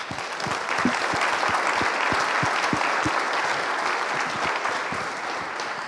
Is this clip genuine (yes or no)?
yes